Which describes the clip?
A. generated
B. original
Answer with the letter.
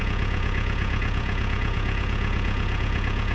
A